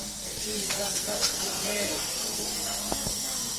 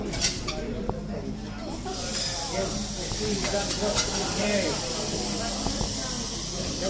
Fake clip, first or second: first